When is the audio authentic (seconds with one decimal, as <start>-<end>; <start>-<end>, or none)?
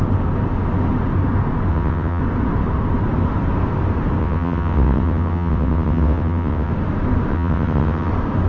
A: 0.0-1.7; 2.2-4.2; 6.7-7.3; 8.1-8.5